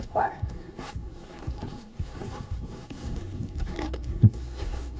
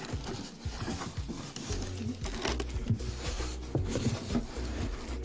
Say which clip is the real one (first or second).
second